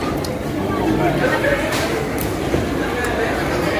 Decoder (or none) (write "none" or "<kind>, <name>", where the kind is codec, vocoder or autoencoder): none